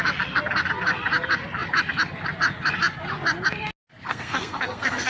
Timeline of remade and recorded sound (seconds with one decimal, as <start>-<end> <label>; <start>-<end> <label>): 0.0-4.1 recorded; 4.1-5.1 remade